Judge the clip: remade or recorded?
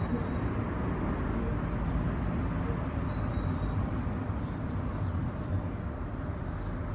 recorded